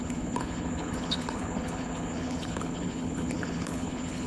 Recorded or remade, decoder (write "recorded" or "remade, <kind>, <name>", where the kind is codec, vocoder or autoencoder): remade, codec, HILCodec